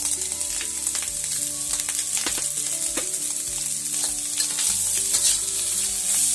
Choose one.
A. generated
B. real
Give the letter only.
B